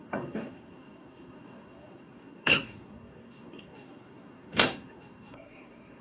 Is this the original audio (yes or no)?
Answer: no